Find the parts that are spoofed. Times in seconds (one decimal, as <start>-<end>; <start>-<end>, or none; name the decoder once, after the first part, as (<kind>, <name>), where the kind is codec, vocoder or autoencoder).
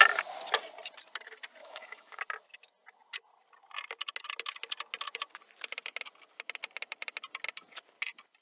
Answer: 1.6-2.2 (autoencoder, DAC-VAE)